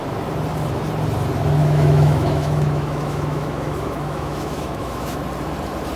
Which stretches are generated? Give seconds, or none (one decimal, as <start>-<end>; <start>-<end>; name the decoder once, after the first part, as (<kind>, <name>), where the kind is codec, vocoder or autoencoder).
1.6-5.2 (autoencoder, DAC-VAE)